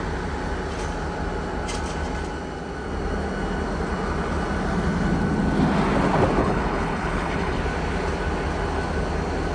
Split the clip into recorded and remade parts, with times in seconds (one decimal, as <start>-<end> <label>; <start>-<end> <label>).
0.0-6.4 recorded; 6.4-7.6 remade; 7.6-9.5 recorded